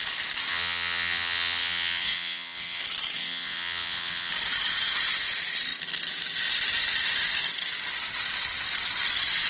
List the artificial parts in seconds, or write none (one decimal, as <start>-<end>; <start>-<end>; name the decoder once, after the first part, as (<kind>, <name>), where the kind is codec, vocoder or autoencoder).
0.5-2.8 (vocoder, WaveNeXt); 3.2-4.3